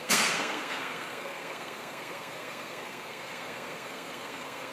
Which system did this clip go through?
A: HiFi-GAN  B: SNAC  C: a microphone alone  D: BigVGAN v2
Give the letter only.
B